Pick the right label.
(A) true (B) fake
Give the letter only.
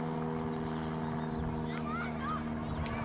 A